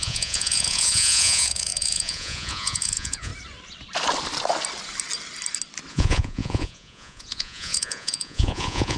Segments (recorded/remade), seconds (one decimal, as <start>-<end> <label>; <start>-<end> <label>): 0.0-3.3 remade; 3.3-5.9 recorded; 5.9-9.0 remade